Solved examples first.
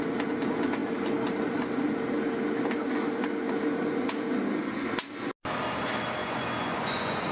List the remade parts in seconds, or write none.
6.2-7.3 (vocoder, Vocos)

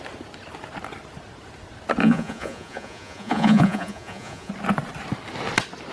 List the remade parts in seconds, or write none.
2.0-4.5 (vocoder, Vocos)

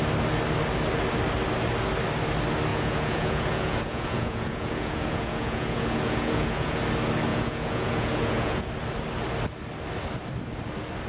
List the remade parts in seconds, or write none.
2.7-6.8 (vocoder, Vocos); 7.3-8.7

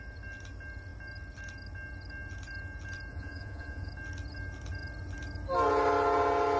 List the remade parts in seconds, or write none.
3.1-3.9 (vocoder, Vocos)

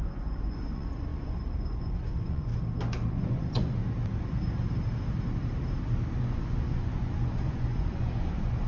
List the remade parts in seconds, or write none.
0.0-2.5 (vocoder, Vocos); 3.1-3.8; 6.2-8.7

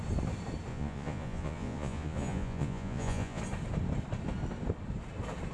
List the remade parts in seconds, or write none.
0.7-3.4 (vocoder, Vocos)

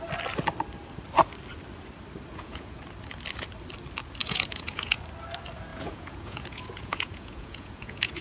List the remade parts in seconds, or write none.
2.3-2.8 (vocoder, Vocos); 4.2-5.0; 5.7-8.2

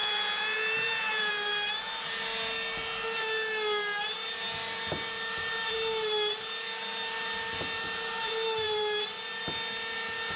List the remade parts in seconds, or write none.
0.0-1.3 (vocoder, Vocos)